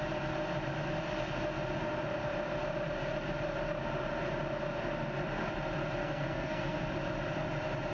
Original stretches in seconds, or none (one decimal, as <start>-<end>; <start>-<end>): 0.0-6.0; 6.8-7.9

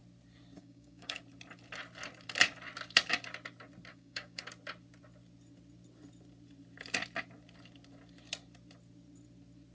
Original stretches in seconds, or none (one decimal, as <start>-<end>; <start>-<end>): 0.0-0.6; 1.2-3.9; 4.4-9.7

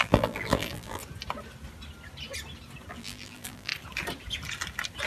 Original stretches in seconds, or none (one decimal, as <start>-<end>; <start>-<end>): 1.0-2.9; 3.7-5.1

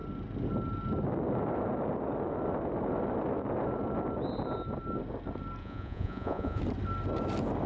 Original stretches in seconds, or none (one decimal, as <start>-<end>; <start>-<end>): 0.0-5.6; 6.6-7.7